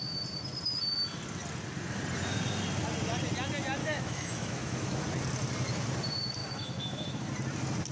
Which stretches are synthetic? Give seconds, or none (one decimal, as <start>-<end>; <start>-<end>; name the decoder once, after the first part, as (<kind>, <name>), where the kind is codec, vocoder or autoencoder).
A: 3.8-5.0 (autoencoder, DAC-VAE); 6.4-7.3